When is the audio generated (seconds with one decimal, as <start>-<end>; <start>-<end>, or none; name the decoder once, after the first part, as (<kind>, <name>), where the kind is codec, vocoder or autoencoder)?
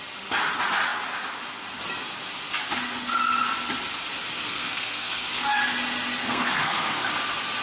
4.4-5.4 (codec, SNAC); 6.2-7.1